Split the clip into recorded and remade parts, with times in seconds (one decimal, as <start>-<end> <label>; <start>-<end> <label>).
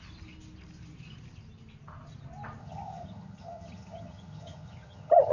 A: 0.0-2.6 recorded; 2.6-5.3 remade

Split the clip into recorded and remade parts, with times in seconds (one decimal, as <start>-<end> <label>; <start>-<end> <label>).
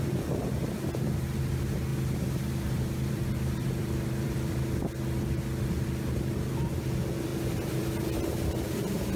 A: 0.0-1.9 recorded; 1.9-4.9 remade; 4.9-9.2 recorded